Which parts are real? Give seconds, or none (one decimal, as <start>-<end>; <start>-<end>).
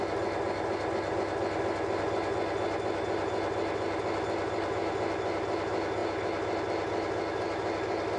0.0-8.2